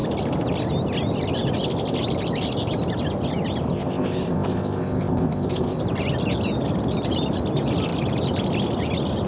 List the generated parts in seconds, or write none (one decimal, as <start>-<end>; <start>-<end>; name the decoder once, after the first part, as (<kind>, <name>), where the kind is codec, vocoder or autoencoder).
3.7-5.8 (codec, ZipCodec)